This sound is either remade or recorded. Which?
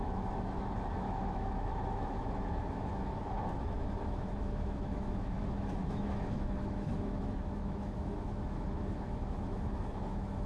remade